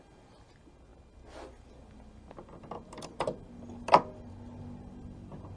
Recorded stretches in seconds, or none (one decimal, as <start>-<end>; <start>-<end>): 0.0-5.6